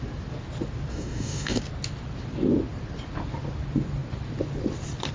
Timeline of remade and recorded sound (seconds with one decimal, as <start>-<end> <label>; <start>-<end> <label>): 0.0-0.9 recorded; 0.9-1.6 remade; 1.6-5.1 recorded